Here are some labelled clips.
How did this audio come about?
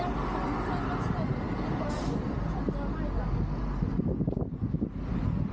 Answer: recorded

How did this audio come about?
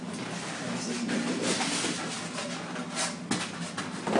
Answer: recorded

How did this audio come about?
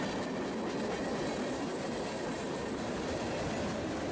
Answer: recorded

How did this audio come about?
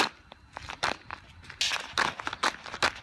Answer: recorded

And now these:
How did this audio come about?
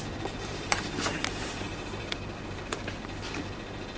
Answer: remade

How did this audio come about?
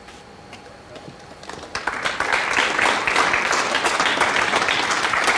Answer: recorded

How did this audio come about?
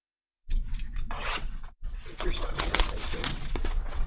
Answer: remade